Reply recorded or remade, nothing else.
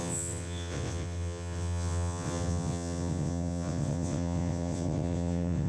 remade